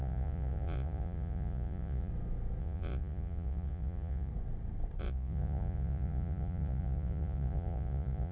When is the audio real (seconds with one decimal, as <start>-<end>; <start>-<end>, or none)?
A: 2.1-2.6; 4.3-5.0